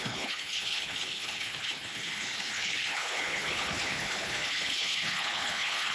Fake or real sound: fake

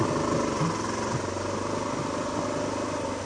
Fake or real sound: real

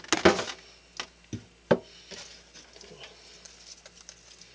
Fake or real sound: real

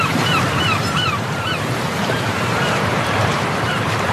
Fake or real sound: fake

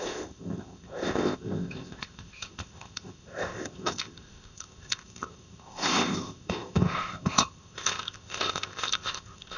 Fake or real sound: fake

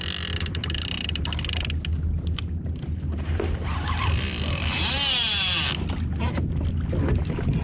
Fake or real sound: real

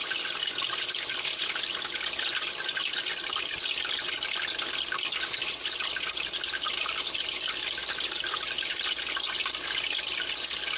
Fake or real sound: real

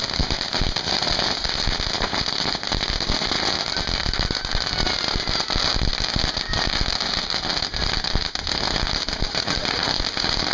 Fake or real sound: real